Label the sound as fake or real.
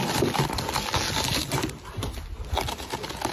real